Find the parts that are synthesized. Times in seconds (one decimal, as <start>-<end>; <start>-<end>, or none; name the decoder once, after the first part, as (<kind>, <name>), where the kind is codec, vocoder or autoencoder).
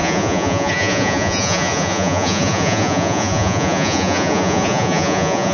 0.0-5.5 (vocoder, Vocos)